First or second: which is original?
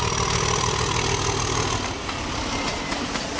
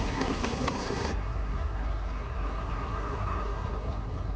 first